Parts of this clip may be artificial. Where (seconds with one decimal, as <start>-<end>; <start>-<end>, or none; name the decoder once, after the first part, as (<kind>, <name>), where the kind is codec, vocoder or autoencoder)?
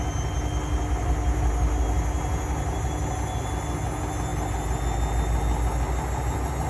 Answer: none